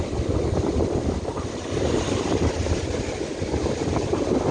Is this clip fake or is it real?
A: real